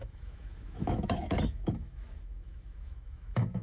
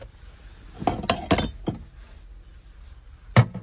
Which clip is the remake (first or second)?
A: first